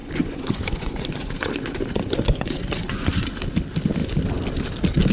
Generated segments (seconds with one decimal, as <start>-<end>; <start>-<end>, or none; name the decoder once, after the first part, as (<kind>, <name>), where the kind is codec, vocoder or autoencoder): 0.0-3.1 (vocoder, Vocos)